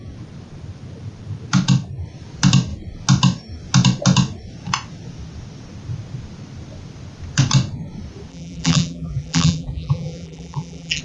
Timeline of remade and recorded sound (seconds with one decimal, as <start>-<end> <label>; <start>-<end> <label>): 0.0-8.3 recorded; 8.3-11.0 remade